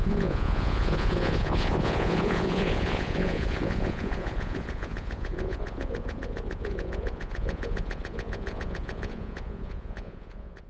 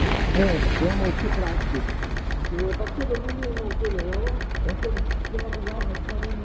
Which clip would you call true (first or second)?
second